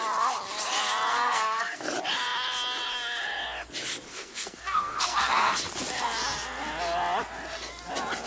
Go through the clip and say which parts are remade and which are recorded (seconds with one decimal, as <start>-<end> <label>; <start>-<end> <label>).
0.0-1.1 recorded; 1.1-1.9 remade; 1.9-4.1 recorded; 4.1-5.5 remade; 5.5-8.3 recorded